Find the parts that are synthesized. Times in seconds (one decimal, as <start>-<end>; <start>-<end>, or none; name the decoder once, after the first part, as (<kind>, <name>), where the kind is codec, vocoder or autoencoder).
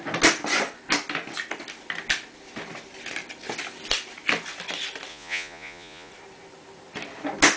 5.1-6.1 (vocoder, Vocos)